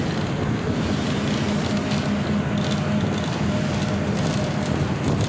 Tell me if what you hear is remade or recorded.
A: recorded